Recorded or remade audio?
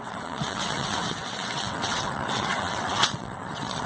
remade